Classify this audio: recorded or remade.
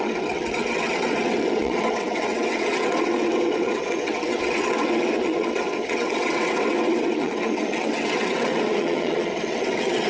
remade